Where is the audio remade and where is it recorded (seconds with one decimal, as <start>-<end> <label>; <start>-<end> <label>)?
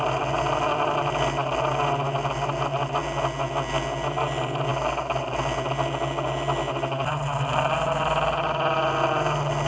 0.0-9.7 recorded